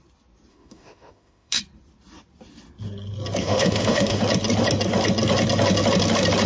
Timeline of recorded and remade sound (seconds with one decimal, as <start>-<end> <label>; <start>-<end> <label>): 0.0-0.5 recorded; 0.5-1.6 remade; 1.6-3.4 recorded; 3.4-4.2 remade; 4.2-6.5 recorded